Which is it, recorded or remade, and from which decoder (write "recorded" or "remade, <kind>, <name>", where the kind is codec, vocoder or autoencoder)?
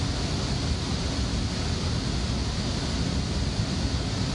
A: recorded